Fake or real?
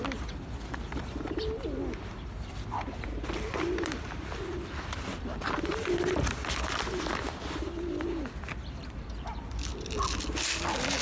real